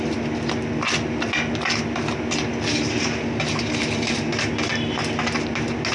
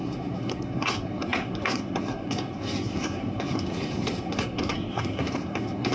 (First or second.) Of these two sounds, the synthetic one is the second